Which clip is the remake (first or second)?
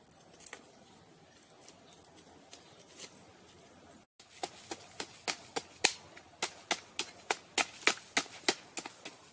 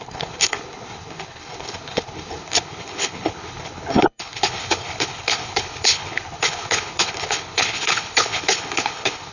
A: second